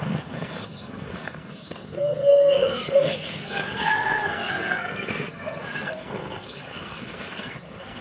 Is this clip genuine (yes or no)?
no